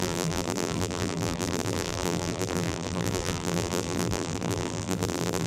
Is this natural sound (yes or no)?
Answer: no